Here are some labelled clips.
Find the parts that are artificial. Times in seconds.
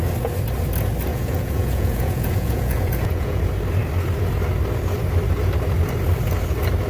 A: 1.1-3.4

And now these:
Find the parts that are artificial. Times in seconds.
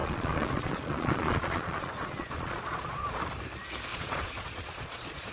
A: 0.0-3.2; 3.9-5.3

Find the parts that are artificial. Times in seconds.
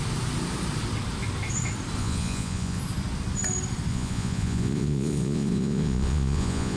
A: 2.0-2.8; 3.9-6.8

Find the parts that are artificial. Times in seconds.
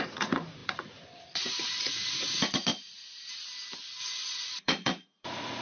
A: 0.0-2.7; 4.0-5.6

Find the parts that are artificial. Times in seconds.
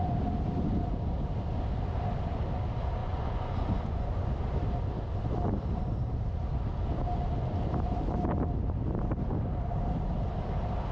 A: 3.0-4.3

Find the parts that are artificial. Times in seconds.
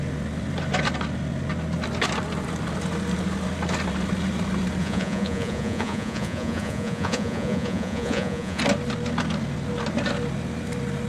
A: 4.8-8.6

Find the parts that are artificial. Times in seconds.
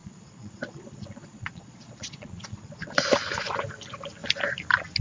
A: 0.0-3.0